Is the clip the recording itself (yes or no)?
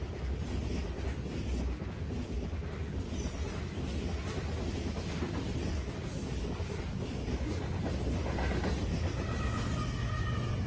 yes